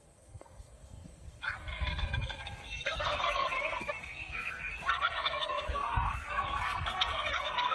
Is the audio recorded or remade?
remade